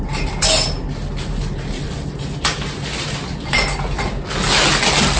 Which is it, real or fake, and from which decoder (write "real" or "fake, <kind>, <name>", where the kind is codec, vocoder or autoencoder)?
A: real